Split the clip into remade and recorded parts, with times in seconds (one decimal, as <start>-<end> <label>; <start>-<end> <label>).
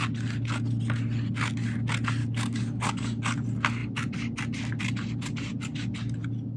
0.0-2.2 recorded; 2.2-3.2 remade; 3.2-6.6 recorded